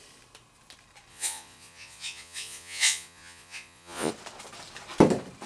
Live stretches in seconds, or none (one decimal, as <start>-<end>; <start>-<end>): 0.0-1.1; 4.1-5.5